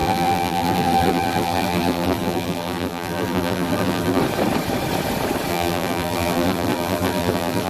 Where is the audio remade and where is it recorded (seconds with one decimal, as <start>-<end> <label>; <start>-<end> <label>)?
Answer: 0.0-4.2 remade; 4.2-5.5 recorded; 5.5-7.7 remade